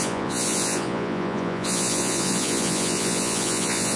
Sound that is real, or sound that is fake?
fake